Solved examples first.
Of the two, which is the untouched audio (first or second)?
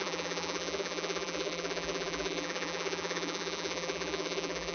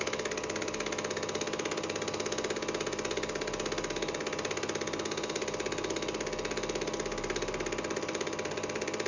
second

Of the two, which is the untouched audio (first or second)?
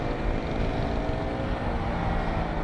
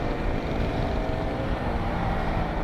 first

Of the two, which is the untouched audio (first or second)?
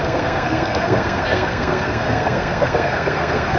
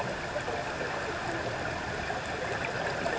second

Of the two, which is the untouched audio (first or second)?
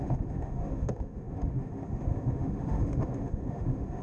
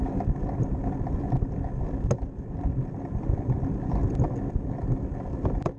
second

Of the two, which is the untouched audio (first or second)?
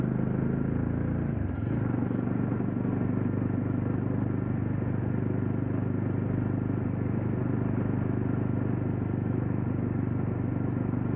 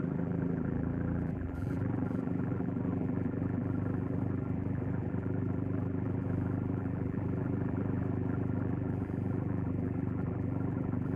first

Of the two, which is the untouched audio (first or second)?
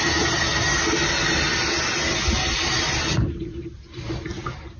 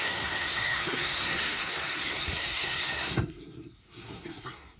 first